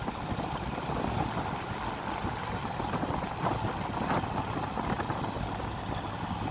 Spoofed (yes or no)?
no